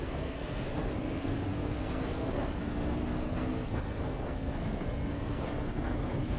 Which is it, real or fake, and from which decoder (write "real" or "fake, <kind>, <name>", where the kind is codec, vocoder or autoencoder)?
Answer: fake, codec, SNAC